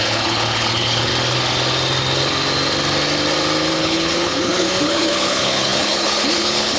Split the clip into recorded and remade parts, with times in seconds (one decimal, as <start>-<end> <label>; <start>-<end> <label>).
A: 0.0-1.1 remade; 1.1-3.7 recorded; 3.7-6.8 remade